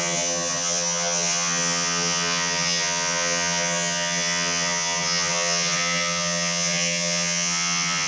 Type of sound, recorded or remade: remade